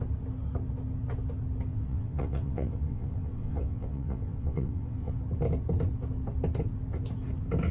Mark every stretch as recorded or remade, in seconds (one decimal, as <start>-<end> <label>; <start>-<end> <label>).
0.0-1.7 recorded; 1.7-5.1 remade; 5.1-7.7 recorded